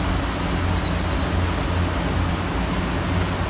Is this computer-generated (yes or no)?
no